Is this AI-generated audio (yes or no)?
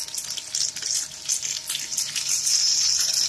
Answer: no